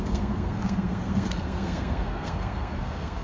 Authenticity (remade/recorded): remade